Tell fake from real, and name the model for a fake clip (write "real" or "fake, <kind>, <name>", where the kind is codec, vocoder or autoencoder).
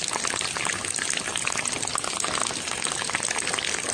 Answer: real